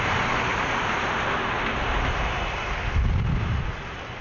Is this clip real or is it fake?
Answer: real